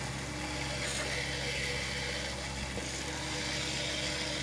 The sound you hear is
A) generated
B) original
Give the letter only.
B